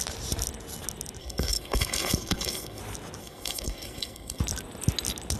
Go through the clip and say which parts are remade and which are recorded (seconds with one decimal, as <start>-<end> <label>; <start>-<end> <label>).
0.0-1.2 recorded; 1.2-2.8 remade; 2.8-3.2 recorded; 3.2-4.4 remade; 4.4-5.4 recorded